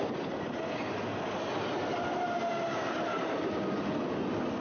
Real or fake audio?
real